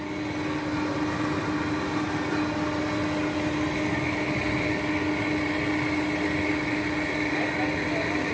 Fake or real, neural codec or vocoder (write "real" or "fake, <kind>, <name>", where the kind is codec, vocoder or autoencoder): real